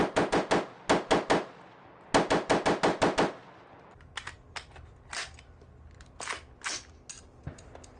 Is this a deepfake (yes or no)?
no